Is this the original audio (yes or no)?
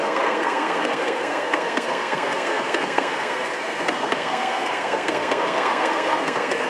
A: no